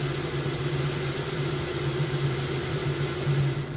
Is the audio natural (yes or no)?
yes